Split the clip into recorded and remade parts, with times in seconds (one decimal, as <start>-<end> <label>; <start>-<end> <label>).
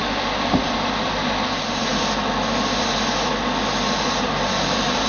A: 0.0-5.1 recorded